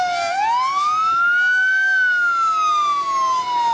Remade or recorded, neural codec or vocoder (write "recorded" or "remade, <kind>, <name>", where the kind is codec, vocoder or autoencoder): recorded